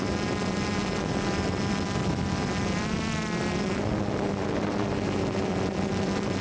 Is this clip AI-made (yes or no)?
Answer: no